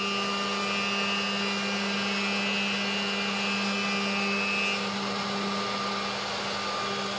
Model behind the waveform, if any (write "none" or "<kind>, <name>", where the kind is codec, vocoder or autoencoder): none